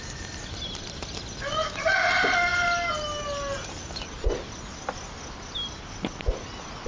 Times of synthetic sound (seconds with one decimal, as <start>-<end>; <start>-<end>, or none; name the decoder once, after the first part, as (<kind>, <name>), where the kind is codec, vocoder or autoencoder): none